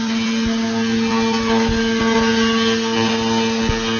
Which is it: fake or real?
real